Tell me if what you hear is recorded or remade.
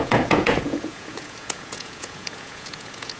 remade